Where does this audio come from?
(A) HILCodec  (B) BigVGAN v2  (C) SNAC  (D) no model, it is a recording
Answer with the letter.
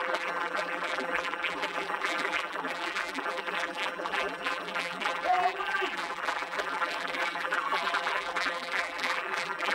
B